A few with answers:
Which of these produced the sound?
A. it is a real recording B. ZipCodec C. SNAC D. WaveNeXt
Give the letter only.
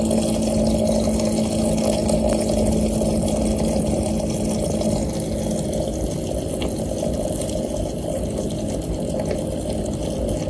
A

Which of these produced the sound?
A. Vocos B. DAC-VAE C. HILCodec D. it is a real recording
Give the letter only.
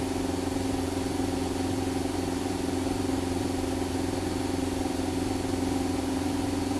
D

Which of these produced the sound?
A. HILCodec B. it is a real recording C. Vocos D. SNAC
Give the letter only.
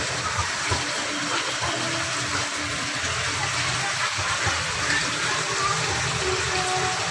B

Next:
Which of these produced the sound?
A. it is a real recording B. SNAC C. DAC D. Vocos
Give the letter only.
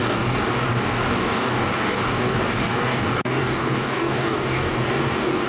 C